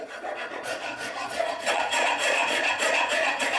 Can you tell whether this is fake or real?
fake